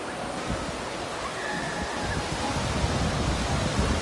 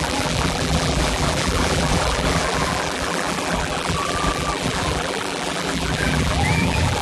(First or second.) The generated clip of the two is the second